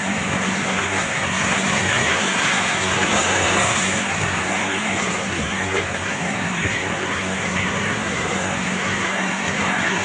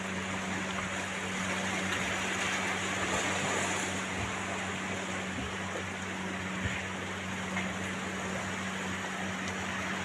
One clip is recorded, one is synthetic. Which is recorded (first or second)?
second